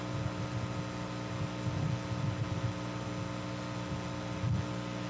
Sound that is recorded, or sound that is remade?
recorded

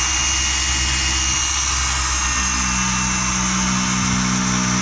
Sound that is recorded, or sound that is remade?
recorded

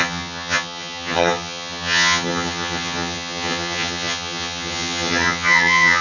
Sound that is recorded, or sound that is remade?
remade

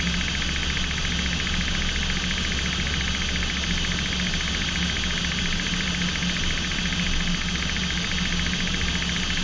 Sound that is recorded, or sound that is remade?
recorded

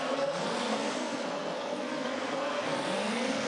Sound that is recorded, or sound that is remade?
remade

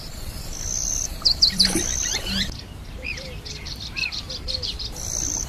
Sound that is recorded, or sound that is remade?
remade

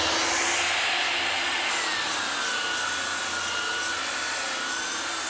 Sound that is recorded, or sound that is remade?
recorded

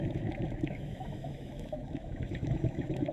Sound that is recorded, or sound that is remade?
remade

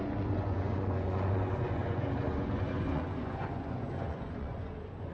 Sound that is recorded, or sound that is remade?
remade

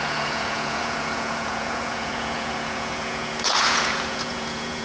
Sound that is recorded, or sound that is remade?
remade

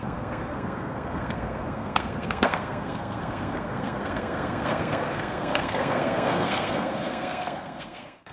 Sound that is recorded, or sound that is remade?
remade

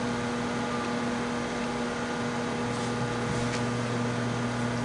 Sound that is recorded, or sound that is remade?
recorded